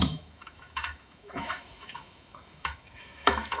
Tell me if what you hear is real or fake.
fake